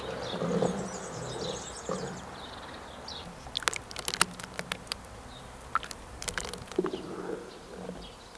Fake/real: real